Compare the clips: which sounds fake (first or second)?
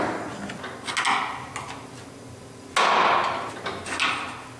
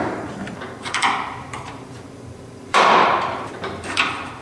second